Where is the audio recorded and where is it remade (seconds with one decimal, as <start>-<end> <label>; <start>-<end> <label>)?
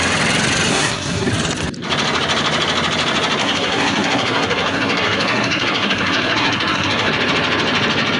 0.0-0.7 recorded; 0.7-1.3 remade; 1.3-3.4 recorded; 3.4-7.1 remade; 7.1-8.2 recorded